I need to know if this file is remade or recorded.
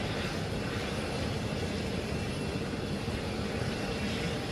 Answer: recorded